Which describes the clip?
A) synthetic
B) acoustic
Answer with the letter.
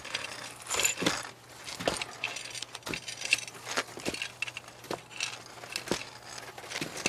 B